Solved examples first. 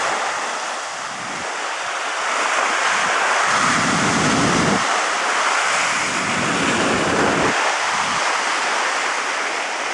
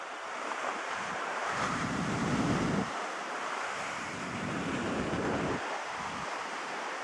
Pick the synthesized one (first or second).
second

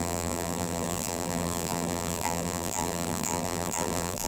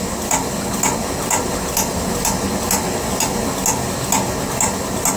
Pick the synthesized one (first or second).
first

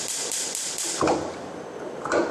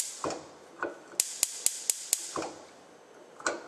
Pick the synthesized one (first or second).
first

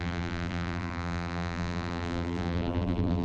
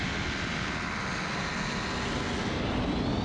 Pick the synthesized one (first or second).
first